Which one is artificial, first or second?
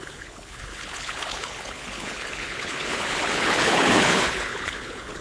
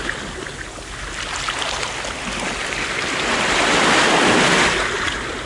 first